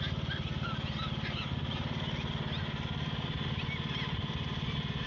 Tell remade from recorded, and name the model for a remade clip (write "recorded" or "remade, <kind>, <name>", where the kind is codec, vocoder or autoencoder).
recorded